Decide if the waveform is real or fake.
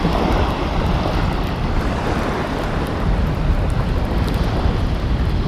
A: real